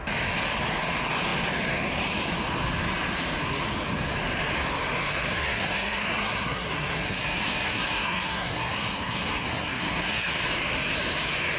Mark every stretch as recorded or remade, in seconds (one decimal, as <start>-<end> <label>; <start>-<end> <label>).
0.0-5.3 recorded; 5.3-10.3 remade; 10.3-11.6 recorded